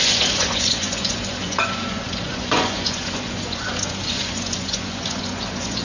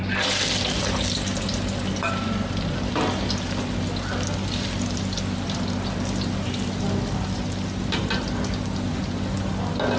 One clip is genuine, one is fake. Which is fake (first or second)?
first